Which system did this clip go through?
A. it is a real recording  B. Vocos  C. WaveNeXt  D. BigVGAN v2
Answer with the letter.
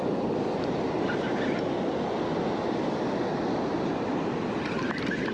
A